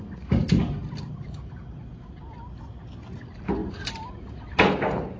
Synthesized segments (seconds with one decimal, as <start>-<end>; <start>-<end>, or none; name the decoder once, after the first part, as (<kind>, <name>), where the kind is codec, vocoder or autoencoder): 3.6-4.6 (vocoder, BigVGAN v2)